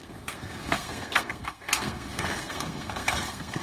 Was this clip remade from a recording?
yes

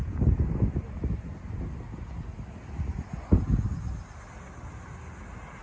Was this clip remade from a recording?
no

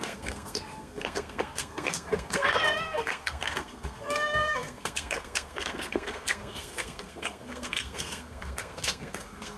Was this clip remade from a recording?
yes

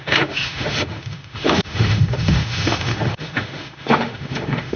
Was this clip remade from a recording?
yes